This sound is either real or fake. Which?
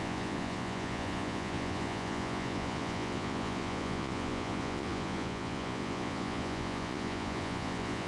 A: fake